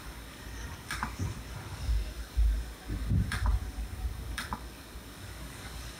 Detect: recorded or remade remade